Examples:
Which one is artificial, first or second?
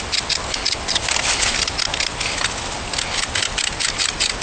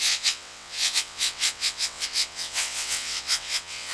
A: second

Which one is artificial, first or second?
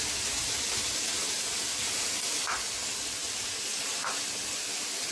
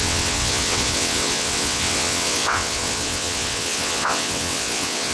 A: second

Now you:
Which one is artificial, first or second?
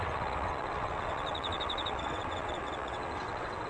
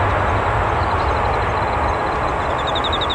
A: first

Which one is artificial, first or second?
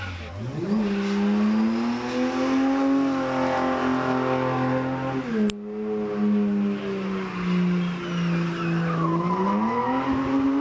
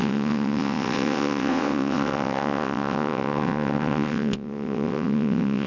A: second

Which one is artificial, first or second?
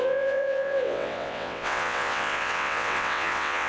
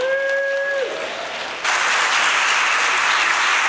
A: first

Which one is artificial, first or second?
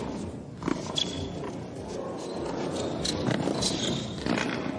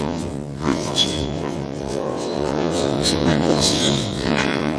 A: second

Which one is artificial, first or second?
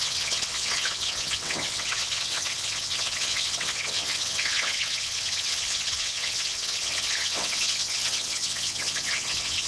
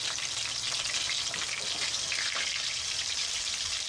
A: first